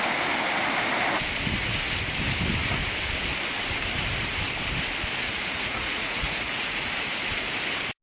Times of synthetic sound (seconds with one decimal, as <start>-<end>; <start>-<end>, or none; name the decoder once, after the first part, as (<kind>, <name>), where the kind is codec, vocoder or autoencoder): 5.2-6.9 (vocoder, Vocos)